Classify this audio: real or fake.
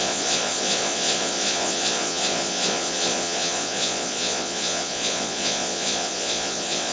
fake